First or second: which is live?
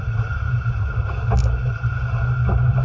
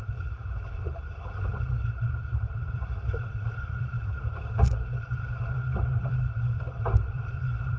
first